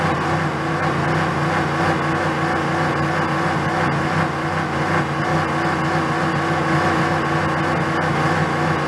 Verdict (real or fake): real